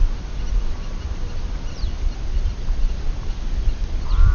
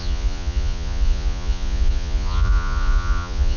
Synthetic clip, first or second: second